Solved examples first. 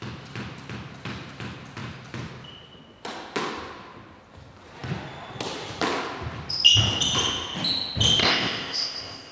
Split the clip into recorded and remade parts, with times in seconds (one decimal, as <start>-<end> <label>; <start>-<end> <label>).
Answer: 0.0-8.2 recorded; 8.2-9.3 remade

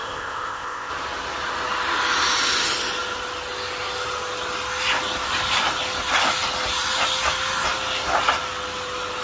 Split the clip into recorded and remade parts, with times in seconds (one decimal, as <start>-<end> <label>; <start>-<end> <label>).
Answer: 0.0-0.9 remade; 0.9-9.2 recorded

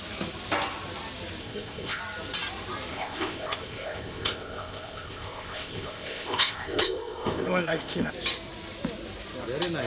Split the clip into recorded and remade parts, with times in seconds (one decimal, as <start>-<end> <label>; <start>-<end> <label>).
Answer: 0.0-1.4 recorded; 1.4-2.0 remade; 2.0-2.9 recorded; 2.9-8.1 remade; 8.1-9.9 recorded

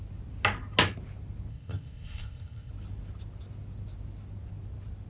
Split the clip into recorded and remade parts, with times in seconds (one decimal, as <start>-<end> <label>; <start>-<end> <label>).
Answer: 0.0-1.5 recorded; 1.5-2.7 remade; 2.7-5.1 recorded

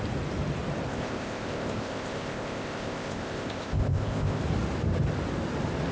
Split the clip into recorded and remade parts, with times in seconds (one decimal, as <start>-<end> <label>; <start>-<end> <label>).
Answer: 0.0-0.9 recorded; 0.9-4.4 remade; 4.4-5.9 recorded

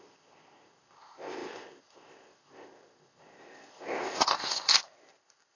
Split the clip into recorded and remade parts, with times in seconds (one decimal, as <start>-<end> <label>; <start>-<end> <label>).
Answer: 0.0-5.6 remade